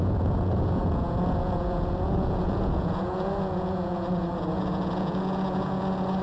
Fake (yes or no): yes